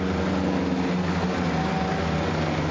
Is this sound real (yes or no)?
yes